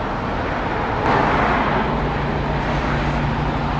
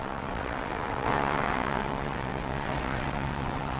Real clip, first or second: first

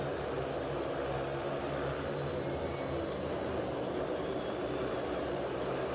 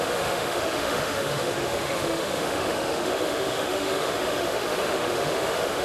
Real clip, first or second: first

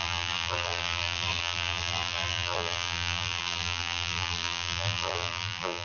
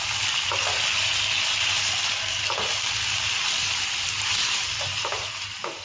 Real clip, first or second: second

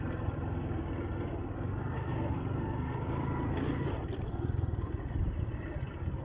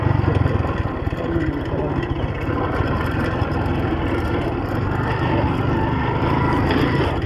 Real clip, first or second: first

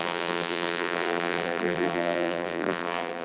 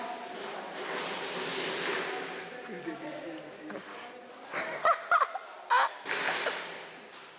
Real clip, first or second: second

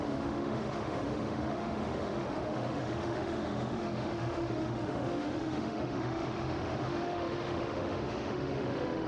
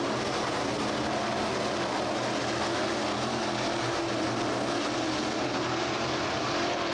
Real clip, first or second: second